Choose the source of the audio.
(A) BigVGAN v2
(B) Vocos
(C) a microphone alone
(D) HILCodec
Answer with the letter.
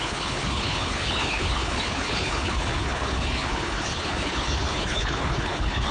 D